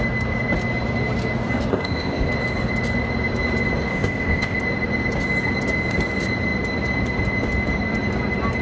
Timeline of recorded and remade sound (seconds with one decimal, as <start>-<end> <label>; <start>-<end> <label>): 0.0-1.7 recorded; 1.7-2.3 remade; 2.3-3.9 recorded; 3.9-4.6 remade; 4.6-8.6 recorded